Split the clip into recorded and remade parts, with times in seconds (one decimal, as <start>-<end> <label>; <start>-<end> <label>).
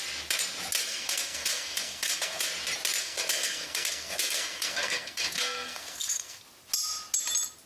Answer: 0.0-0.8 recorded; 0.8-2.5 remade; 2.5-3.0 recorded; 3.0-6.4 remade; 6.4-7.7 recorded